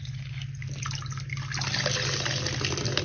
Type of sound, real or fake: real